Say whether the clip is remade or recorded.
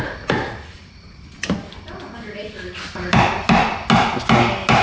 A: recorded